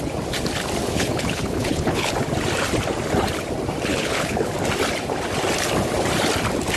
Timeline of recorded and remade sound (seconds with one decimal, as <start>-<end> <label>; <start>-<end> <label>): 0.0-0.8 recorded; 0.8-2.1 remade; 2.1-3.9 recorded; 3.9-4.5 remade; 4.5-6.8 recorded